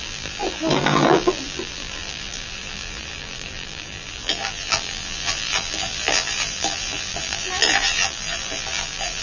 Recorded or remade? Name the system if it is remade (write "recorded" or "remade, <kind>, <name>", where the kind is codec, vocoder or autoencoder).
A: remade, vocoder, BigVGAN v2